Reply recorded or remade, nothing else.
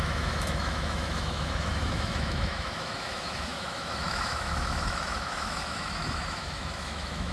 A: remade